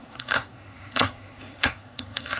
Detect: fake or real fake